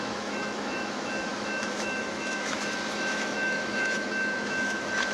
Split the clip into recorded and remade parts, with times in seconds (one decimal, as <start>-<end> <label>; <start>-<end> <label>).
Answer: 0.0-5.1 remade